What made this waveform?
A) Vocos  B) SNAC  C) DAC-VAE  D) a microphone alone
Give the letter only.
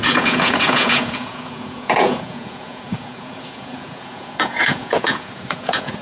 A